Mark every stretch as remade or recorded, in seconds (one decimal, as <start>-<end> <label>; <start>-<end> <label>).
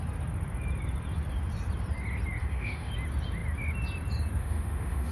0.0-2.4 recorded; 2.4-2.9 remade; 2.9-4.4 recorded; 4.4-5.1 remade